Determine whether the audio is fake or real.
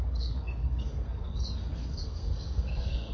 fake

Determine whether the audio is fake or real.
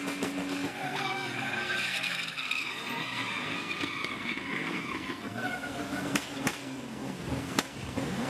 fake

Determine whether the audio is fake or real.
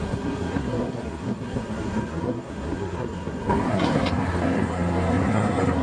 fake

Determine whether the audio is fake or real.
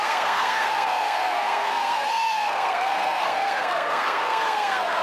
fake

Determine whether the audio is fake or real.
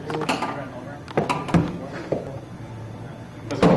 real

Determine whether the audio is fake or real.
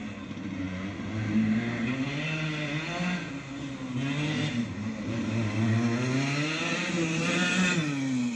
real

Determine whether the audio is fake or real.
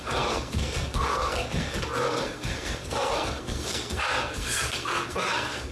fake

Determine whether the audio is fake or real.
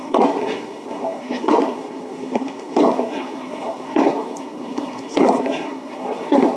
fake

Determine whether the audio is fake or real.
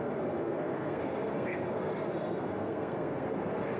fake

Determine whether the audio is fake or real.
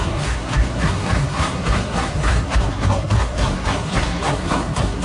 fake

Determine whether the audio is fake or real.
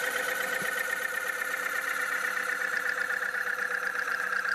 real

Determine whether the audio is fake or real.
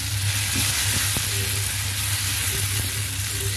real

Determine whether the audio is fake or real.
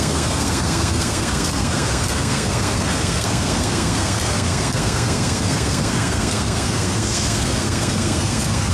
fake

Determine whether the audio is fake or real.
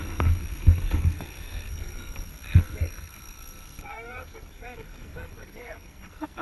fake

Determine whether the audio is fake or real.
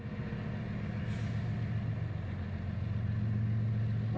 real